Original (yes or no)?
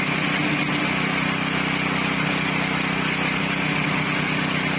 yes